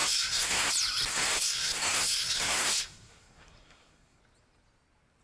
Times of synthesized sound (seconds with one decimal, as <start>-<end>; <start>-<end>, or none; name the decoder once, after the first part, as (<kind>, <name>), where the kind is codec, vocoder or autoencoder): 0.0-0.7 (codec, SNAC); 1.1-4.2